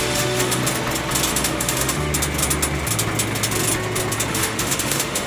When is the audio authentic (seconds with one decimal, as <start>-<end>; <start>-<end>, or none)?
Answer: 0.6-1.3; 2.1-4.3